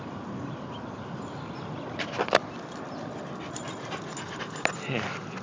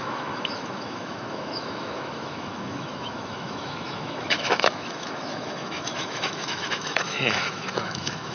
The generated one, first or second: second